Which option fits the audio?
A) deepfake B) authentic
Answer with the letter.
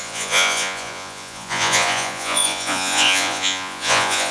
A